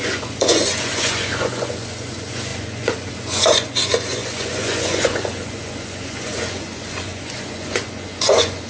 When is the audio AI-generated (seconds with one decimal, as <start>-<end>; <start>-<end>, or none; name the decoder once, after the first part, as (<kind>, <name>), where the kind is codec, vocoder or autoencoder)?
0.0-8.7 (vocoder, Vocos)